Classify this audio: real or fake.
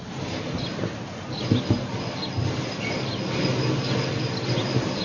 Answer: real